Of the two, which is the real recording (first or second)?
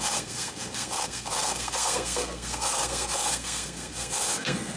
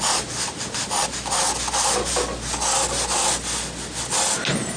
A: second